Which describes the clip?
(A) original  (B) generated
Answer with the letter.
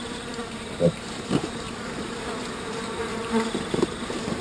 B